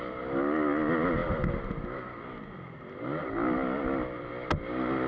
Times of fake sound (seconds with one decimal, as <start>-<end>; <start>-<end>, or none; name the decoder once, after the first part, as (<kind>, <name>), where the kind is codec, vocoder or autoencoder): none